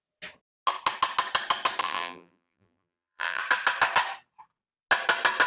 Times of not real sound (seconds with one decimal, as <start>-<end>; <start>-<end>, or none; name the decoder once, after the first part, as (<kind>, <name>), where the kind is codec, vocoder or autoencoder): 1.8-3.4 (vocoder, BigVGAN v2)